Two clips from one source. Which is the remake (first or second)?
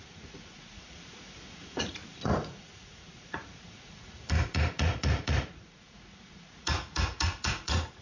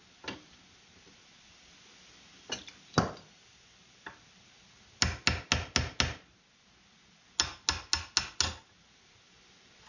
first